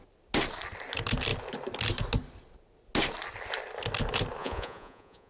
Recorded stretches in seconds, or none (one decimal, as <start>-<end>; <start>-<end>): 0.0-4.4